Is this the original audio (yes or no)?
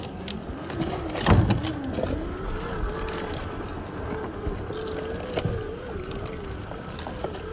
yes